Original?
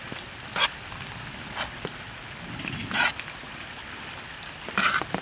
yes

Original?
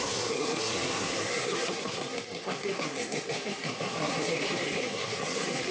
no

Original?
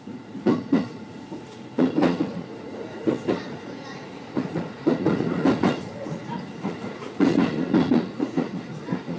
no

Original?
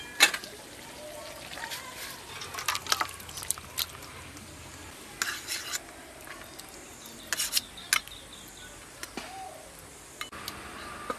yes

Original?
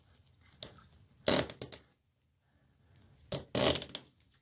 yes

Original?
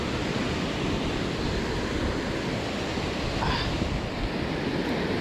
yes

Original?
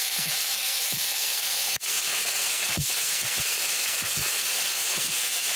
no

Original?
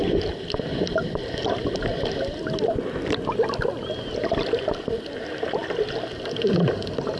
yes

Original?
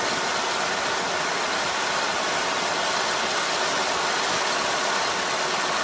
yes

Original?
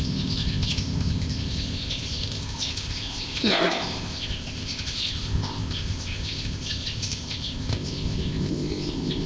no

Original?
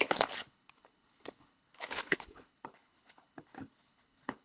no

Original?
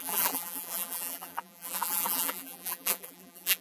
no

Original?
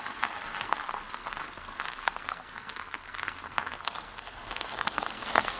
no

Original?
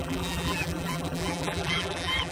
no